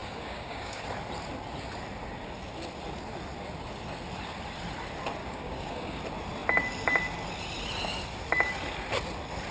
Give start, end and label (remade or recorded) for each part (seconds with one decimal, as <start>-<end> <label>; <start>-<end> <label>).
0.0-0.8 remade; 0.8-5.2 recorded; 5.2-6.0 remade; 6.0-9.5 recorded